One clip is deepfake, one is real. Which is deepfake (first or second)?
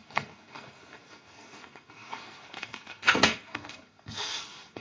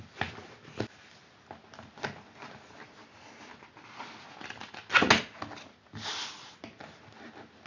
first